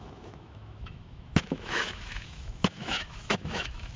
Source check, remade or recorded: remade